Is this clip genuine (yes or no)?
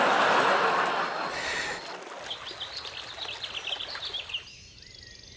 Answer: yes